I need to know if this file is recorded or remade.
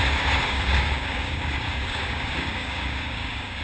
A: remade